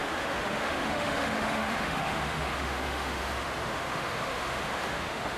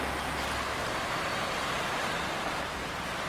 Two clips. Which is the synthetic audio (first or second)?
first